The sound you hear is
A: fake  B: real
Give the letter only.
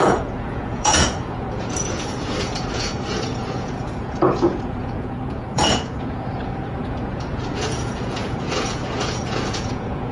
A